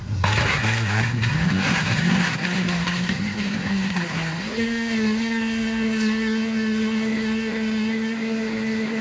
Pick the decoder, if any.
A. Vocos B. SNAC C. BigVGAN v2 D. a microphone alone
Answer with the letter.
B